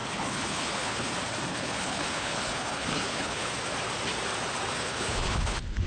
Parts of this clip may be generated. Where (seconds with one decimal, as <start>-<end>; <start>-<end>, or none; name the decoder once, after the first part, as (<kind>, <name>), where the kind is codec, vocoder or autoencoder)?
0.0-1.1 (codec, HILCodec); 1.5-3.5; 4.7-5.9